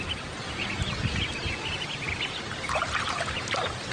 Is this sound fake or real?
real